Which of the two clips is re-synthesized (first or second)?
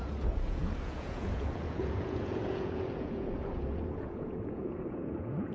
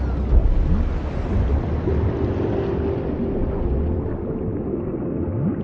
first